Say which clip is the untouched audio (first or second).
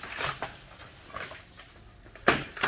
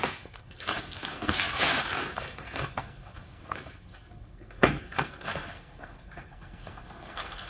first